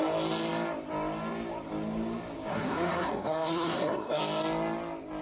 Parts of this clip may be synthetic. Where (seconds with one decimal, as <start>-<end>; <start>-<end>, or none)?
2.5-4.2

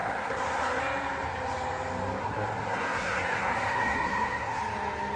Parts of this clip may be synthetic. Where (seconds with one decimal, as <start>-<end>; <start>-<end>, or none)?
0.0-0.8; 2.2-4.6

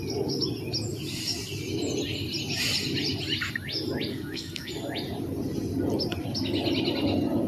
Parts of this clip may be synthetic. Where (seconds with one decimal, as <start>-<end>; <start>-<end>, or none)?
4.1-4.7

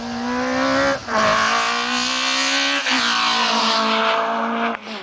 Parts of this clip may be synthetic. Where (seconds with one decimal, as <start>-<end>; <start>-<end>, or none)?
none

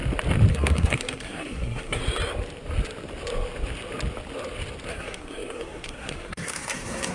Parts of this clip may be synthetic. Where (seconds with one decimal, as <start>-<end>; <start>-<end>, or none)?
0.5-2.0; 4.9-7.1

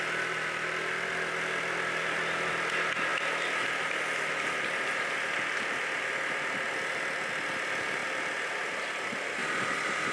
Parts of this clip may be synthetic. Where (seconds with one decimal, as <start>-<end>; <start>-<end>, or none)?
none

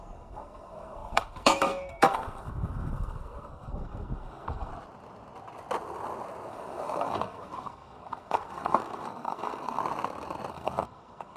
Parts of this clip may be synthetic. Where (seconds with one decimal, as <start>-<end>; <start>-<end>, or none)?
0.0-4.7; 6.5-9.8; 10.5-11.4

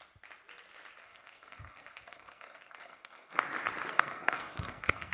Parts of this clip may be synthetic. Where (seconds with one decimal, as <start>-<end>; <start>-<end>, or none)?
1.0-3.4; 3.9-5.1